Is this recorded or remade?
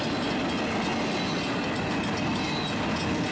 recorded